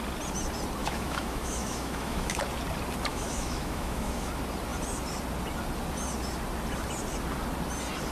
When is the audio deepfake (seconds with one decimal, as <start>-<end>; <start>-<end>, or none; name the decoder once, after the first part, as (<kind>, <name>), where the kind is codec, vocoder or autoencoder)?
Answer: 0.8-2.4 (autoencoder, DAC-VAE); 3.1-4.3